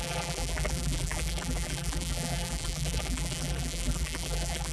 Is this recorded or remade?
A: remade